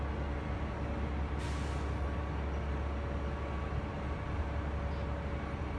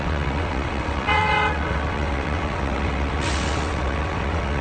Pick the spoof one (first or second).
second